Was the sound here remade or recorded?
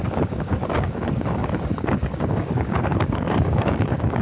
remade